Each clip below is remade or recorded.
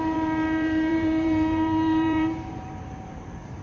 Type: remade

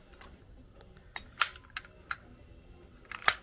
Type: recorded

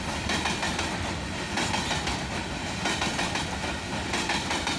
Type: recorded